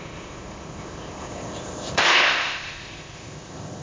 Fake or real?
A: fake